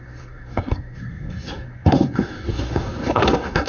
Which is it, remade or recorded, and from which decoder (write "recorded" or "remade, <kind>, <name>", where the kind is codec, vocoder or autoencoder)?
remade, codec, SNAC